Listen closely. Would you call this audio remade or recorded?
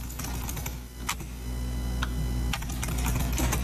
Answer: recorded